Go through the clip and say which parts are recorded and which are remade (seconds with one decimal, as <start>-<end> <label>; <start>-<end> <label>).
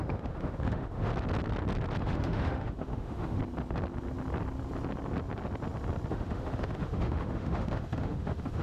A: 0.0-1.1 remade; 1.1-2.0 recorded; 2.0-3.4 remade; 3.4-6.1 recorded; 6.1-8.6 remade